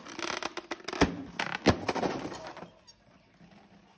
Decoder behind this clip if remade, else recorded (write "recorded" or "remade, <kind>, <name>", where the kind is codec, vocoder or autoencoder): recorded